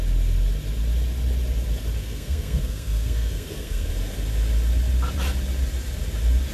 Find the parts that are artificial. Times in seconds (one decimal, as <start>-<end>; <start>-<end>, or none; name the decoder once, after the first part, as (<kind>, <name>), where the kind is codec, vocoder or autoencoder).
2.0-3.9 (codec, SNAC)